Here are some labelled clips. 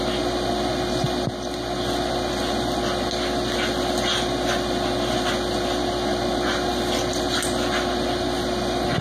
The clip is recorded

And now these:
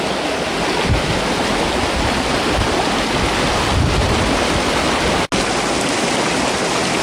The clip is recorded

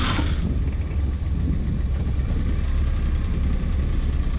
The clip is recorded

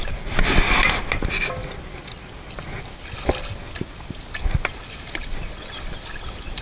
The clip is recorded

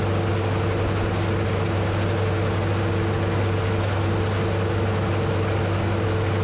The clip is recorded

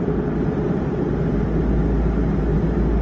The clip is recorded